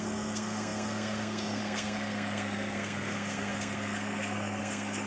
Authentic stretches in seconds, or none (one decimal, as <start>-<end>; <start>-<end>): none